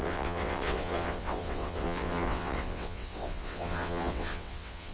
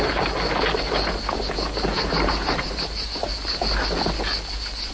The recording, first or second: second